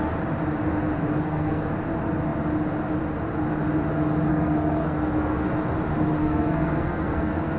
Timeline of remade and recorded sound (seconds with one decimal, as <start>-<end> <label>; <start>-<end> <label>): 0.0-1.1 recorded; 1.1-1.7 remade; 1.7-4.3 recorded; 4.3-5.5 remade; 5.5-6.2 recorded; 6.2-7.6 remade